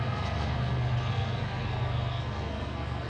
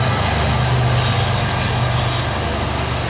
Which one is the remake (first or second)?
first